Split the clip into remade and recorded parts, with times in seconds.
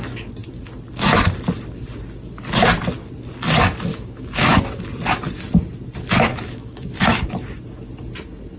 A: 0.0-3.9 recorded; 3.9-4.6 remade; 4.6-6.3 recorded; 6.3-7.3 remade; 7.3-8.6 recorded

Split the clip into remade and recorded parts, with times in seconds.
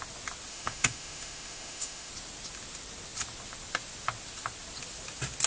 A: 0.0-0.5 recorded; 0.5-2.1 remade; 2.1-5.5 recorded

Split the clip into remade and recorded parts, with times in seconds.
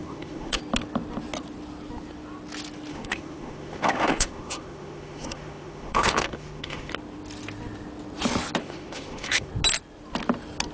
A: 0.0-0.6 remade; 0.6-2.9 recorded; 2.9-6.9 remade; 6.9-8.6 recorded; 8.6-9.5 remade; 9.5-10.7 recorded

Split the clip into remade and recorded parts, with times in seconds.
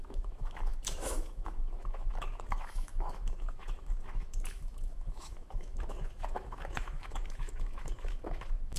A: 0.0-8.8 remade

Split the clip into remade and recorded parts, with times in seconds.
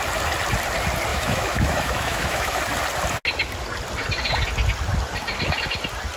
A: 0.0-1.1 recorded; 1.1-2.6 remade; 2.6-6.2 recorded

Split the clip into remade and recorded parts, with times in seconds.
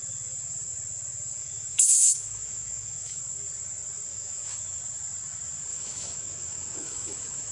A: 0.0-1.4 recorded; 1.4-3.2 remade; 3.2-4.1 recorded; 4.1-4.8 remade; 4.8-5.7 recorded; 5.7-7.5 remade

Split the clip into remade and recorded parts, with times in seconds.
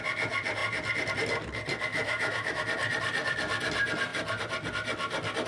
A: 0.0-1.9 recorded; 1.9-2.6 remade; 2.6-5.5 recorded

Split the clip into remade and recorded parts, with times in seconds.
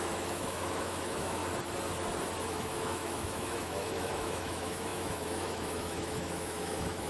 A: 0.0-1.4 remade; 1.4-2.5 recorded; 2.5-7.1 remade